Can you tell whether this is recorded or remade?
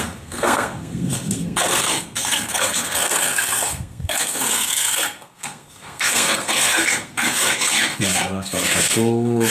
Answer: remade